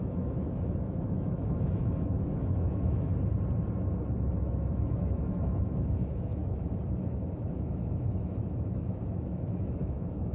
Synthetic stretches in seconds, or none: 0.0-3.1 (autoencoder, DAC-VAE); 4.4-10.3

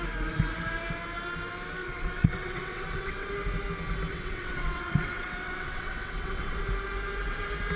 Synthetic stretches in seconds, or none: 1.8-3.3 (vocoder, WaveNeXt); 4.1-6.6

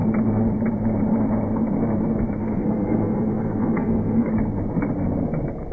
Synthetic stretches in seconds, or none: 2.4-4.3 (codec, SNAC)